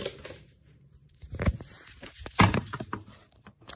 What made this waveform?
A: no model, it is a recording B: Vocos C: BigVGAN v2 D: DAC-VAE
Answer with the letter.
C